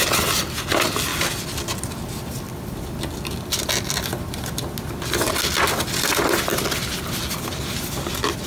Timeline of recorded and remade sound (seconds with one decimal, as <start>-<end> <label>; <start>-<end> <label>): 0.0-8.5 recorded